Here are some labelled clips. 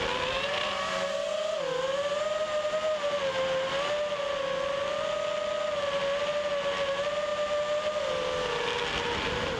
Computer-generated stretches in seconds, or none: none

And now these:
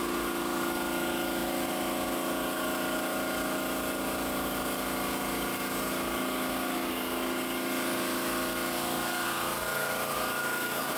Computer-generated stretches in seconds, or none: 0.0-11.0 (codec, DAC)

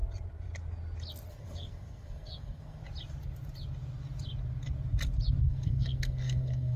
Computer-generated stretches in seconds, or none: 1.3-2.8 (codec, SNAC); 5.4-6.8

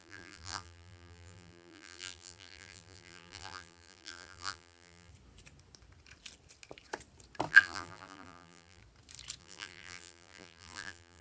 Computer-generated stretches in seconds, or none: 0.0-5.1 (vocoder, BigVGAN v2); 7.5-8.8; 9.4-11.2

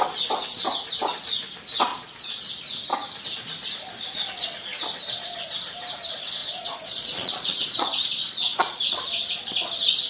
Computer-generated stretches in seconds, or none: 1.9-2.4 (vocoder, Vocos); 6.4-8.8